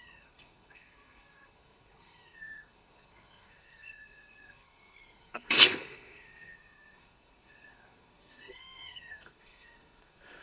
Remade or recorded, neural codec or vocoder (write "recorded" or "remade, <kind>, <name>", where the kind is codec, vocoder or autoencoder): remade, codec, SNAC